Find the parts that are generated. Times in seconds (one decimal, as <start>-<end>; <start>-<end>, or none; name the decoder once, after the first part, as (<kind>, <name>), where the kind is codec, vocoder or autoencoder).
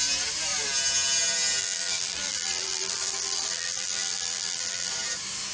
1.6-4.9 (vocoder, BigVGAN v2)